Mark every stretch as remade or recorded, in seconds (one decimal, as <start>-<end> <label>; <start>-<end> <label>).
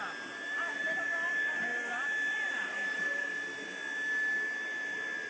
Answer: 0.0-5.3 recorded